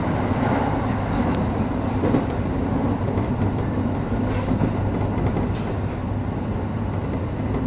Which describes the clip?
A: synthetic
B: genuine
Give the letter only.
A